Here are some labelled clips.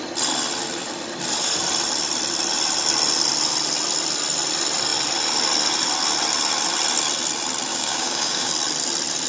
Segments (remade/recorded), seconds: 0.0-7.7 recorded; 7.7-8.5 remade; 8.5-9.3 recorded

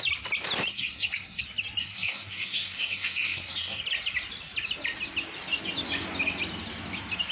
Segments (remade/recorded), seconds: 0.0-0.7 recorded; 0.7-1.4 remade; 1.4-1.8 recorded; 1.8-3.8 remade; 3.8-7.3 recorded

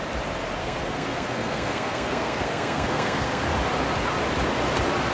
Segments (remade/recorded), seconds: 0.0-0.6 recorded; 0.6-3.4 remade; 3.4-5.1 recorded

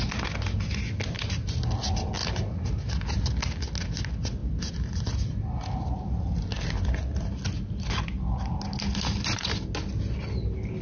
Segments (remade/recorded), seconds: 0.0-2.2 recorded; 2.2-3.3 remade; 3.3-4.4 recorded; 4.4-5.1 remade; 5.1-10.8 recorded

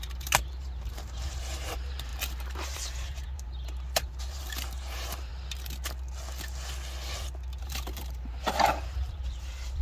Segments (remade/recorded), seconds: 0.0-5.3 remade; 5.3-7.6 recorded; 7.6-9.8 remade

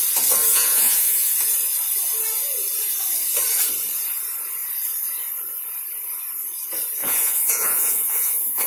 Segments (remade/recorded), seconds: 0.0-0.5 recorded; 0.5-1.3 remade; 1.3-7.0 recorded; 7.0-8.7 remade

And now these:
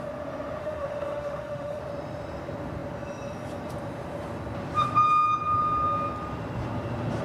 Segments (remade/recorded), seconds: 0.0-0.6 recorded; 0.6-1.8 remade; 1.8-7.2 recorded